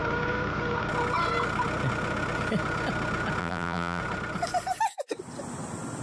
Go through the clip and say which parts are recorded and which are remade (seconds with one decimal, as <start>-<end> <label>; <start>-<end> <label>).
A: 0.0-3.4 recorded; 3.4-4.0 remade; 4.0-6.0 recorded